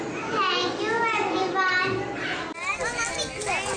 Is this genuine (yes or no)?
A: yes